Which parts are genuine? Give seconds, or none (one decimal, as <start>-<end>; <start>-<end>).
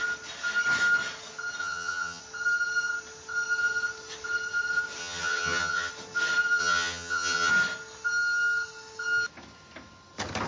0.0-1.6; 2.2-5.0; 5.9-6.6; 7.5-10.5